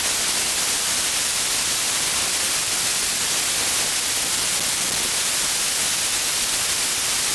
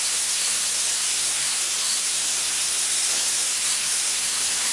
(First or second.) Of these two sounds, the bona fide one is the first